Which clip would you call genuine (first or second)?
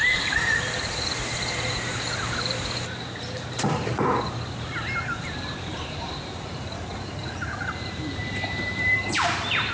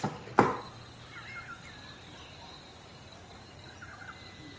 second